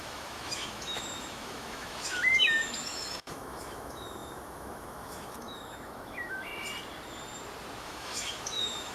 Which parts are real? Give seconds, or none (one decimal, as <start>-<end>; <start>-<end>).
6.5-7.8